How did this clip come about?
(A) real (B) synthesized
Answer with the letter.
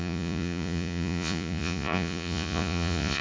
B